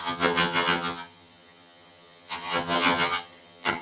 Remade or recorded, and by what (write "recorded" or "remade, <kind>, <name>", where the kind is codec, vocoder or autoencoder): remade, vocoder, HiFi-GAN